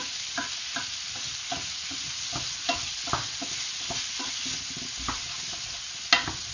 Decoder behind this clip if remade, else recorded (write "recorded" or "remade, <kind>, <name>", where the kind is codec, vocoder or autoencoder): recorded